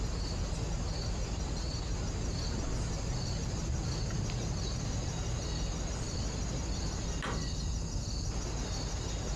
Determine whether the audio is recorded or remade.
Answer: recorded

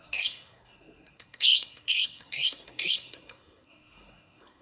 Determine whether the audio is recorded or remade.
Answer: remade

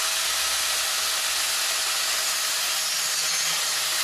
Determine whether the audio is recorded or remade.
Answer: recorded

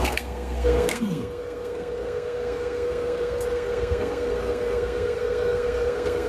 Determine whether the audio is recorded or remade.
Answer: remade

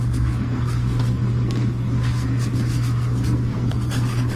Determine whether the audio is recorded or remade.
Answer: remade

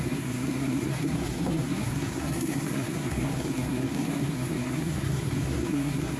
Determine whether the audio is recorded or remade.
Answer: remade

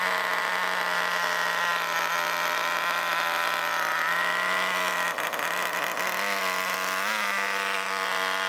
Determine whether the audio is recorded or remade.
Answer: recorded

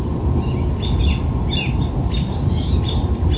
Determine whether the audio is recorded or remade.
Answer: recorded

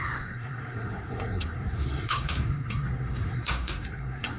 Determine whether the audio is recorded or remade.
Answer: remade